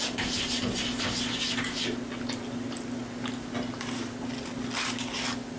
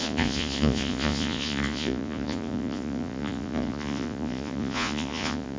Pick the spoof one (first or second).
second